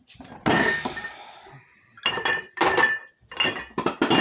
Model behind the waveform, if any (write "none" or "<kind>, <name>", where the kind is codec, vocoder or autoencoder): none